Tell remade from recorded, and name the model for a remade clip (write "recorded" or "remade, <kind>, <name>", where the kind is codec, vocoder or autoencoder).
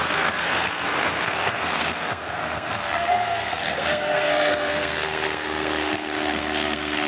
remade, codec, SNAC